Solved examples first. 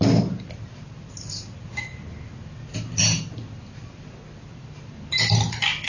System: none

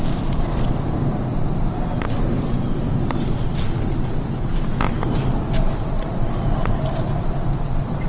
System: none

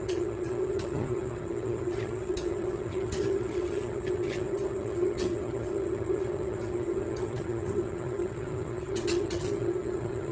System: vocoder, HiFi-GAN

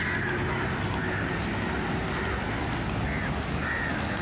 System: none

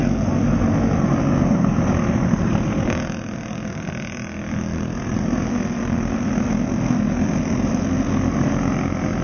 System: none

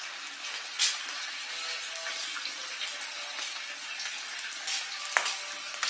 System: none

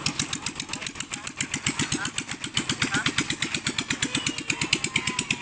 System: none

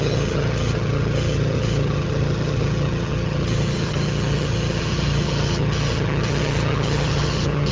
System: vocoder, HiFi-GAN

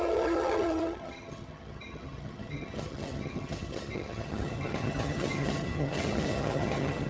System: vocoder, HiFi-GAN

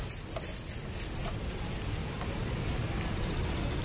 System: none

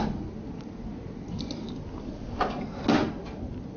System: none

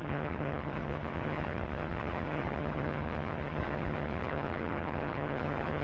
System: vocoder, HiFi-GAN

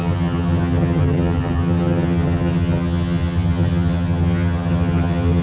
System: vocoder, HiFi-GAN